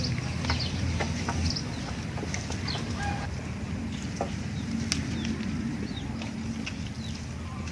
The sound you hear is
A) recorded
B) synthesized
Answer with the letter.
A